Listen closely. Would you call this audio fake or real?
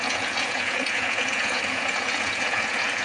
fake